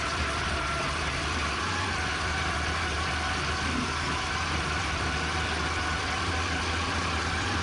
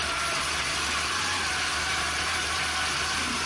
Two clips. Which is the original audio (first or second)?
second